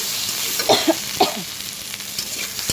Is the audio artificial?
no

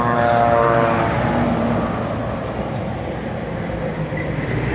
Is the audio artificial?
no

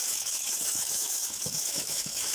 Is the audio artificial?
yes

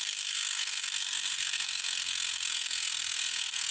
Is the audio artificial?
yes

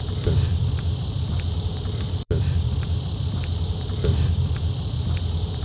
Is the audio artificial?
yes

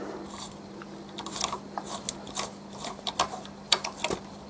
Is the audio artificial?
no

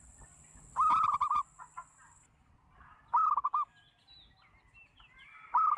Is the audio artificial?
no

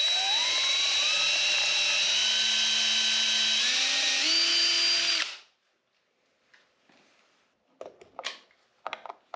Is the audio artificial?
no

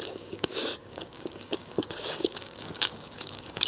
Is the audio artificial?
yes